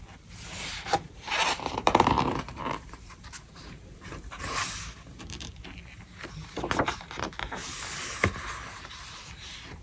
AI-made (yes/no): yes